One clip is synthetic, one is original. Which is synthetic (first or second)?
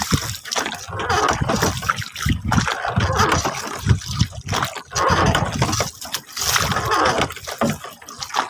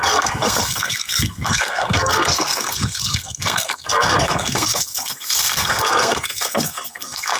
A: second